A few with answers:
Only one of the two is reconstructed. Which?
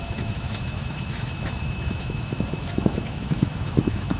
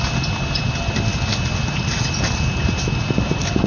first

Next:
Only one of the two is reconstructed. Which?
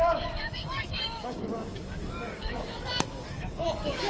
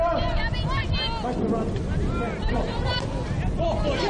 first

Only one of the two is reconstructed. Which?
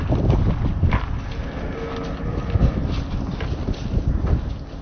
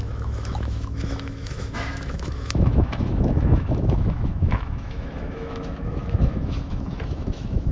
second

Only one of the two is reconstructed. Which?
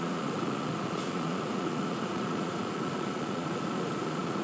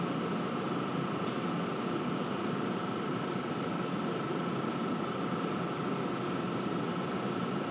first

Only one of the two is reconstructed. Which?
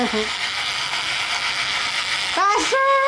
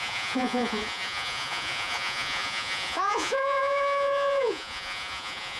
second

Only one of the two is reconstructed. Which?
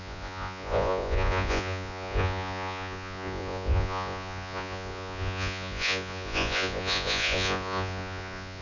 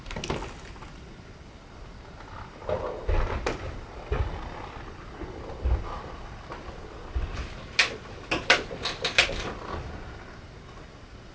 first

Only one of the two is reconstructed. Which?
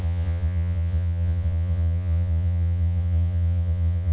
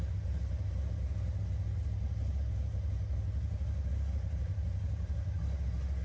first